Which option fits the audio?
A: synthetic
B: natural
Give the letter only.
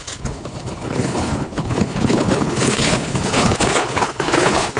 A